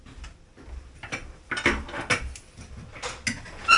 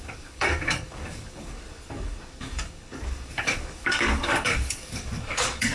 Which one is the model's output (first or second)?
second